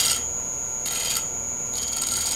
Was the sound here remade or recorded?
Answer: recorded